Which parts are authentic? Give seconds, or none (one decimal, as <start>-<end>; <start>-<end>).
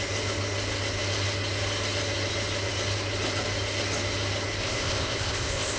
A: 0.0-4.6